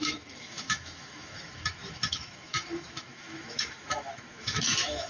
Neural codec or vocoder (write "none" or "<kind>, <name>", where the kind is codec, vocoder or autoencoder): autoencoder, DAC-VAE